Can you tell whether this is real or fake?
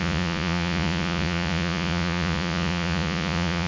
fake